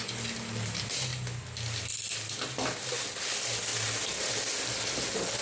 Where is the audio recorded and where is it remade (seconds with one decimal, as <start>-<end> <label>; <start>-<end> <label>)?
0.0-3.7 recorded; 3.7-4.3 remade; 4.3-5.4 recorded